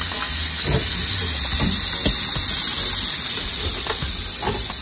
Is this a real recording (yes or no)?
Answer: yes